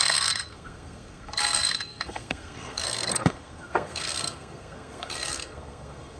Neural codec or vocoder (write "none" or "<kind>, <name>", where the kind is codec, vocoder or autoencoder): codec, SNAC